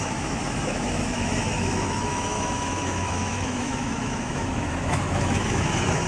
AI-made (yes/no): yes